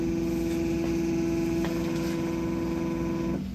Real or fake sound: real